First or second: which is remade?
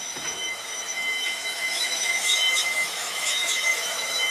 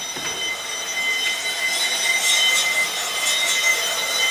first